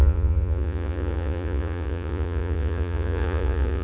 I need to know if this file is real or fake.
fake